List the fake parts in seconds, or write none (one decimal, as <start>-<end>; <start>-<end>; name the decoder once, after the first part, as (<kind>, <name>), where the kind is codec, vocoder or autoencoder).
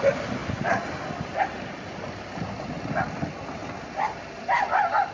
none